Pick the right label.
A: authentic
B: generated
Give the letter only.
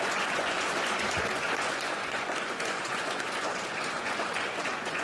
B